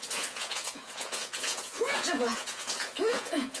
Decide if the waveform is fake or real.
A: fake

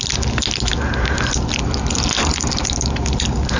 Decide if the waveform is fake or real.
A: real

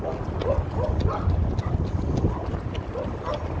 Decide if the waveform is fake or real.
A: real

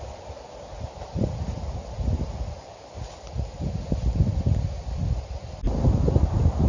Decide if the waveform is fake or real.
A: real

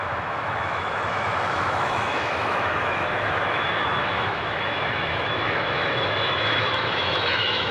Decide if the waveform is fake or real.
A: fake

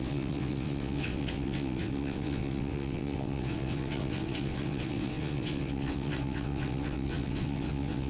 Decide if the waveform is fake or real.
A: fake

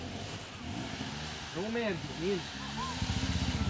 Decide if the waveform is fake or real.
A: real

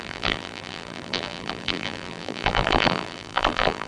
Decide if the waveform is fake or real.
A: fake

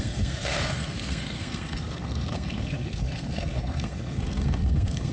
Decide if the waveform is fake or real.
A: fake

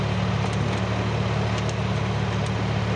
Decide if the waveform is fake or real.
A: real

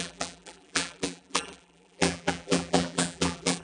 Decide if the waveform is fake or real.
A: fake